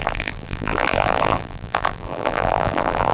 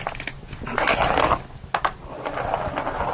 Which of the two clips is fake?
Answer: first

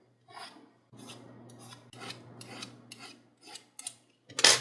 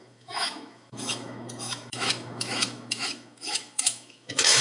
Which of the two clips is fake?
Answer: second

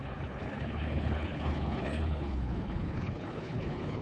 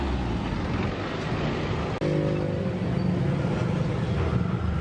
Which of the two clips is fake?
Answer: first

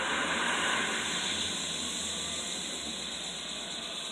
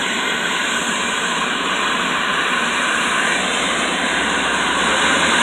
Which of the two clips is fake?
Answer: second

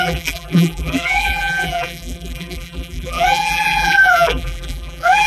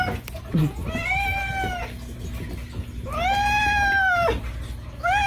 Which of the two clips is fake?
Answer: first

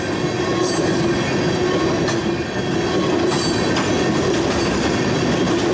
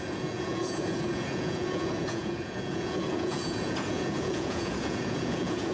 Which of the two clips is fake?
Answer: second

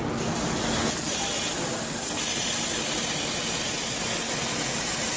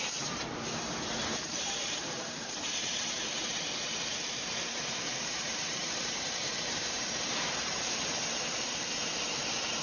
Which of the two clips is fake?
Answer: second